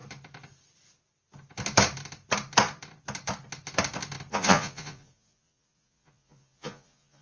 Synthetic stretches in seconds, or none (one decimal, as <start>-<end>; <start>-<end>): 4.3-7.2